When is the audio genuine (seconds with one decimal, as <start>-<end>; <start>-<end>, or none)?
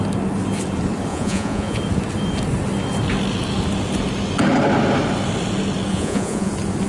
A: 0.0-1.1; 1.8-5.9; 6.5-6.9